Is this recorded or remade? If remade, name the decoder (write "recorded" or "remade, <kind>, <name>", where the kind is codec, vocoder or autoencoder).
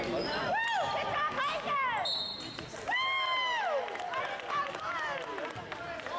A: recorded